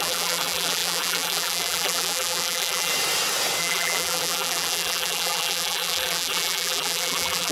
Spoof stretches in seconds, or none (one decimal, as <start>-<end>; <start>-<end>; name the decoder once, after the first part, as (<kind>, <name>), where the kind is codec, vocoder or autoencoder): 0.0-2.9 (vocoder, BigVGAN v2); 3.6-7.5